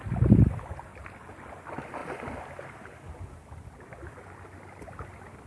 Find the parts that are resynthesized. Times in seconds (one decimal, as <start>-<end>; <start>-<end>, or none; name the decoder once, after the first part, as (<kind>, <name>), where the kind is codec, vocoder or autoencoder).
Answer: none